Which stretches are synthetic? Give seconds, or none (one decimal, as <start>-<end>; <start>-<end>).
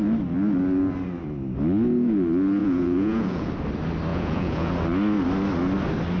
2.6-3.5; 4.1-4.7